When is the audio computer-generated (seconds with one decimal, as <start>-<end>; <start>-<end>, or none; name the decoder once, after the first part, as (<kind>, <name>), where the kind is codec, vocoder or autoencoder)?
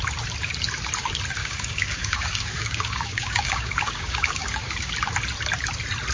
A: 1.4-4.9 (codec, DAC)